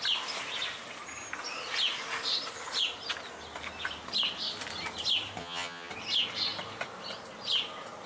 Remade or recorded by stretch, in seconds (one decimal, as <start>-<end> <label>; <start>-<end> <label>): 0.0-5.4 recorded; 5.4-5.9 remade; 5.9-8.1 recorded